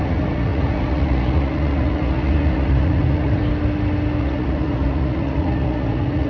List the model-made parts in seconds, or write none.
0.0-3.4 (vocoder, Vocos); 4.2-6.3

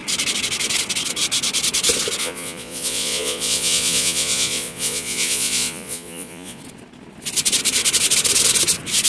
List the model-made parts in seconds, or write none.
2.2-6.6 (vocoder, Vocos)